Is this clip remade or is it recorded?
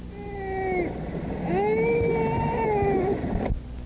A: recorded